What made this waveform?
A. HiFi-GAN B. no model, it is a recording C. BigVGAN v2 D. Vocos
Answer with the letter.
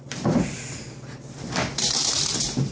C